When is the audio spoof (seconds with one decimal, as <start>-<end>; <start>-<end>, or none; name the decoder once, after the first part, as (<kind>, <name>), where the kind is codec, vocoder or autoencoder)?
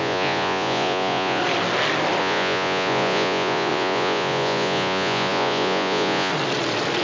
0.0-1.4 (vocoder, Vocos); 2.2-6.3